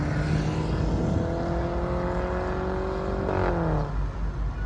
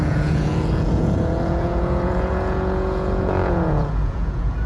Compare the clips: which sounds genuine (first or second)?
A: first